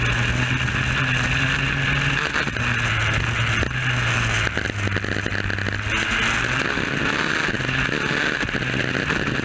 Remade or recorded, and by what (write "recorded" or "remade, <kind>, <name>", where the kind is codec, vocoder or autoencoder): recorded